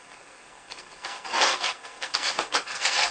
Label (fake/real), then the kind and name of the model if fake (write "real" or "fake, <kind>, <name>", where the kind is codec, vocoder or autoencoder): fake, codec, SNAC